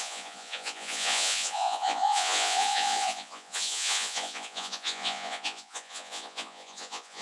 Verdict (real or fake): fake